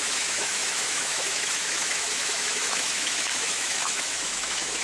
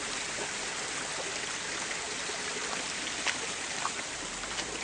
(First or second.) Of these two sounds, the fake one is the first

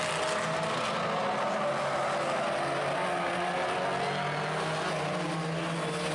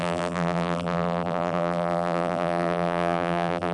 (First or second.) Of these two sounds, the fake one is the second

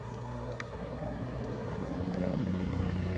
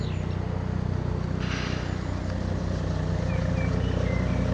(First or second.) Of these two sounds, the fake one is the first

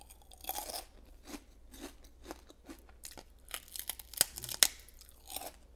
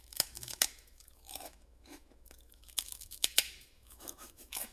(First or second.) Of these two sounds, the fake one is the second